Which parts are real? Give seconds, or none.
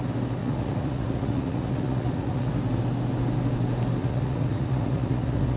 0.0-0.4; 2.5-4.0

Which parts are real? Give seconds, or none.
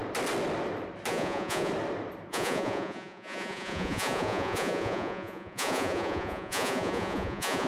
0.0-1.1; 1.7-2.3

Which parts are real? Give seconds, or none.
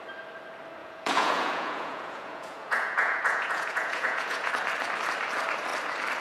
0.0-0.8; 4.5-6.2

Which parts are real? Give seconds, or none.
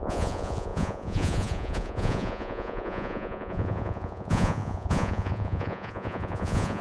none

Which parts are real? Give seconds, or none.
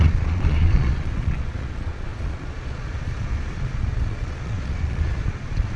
none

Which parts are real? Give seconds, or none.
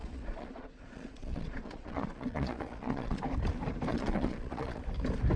3.2-3.9; 4.8-5.4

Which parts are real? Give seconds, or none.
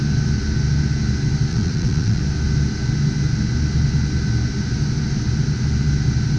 0.0-1.5; 2.2-6.4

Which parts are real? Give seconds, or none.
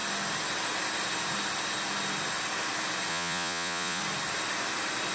0.0-3.1; 4.0-5.1